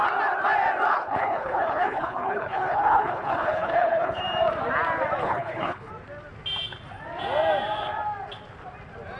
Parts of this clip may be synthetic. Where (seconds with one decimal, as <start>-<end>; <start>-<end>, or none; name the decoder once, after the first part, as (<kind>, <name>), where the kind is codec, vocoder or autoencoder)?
0.9-4.2 (codec, HILCodec); 5.2-5.9